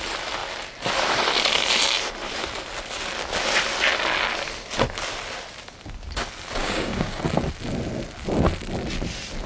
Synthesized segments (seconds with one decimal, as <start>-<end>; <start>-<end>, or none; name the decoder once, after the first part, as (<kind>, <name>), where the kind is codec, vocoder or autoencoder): 6.6-7.2 (codec, DAC)